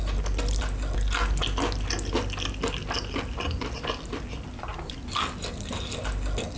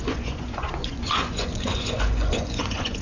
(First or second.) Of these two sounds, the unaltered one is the first